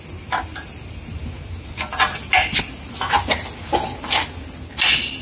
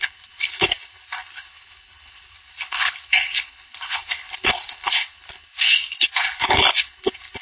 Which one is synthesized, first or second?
second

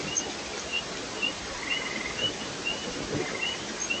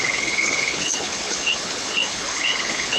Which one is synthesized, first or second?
second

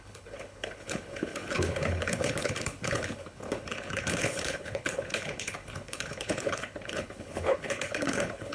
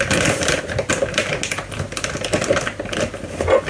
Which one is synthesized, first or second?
first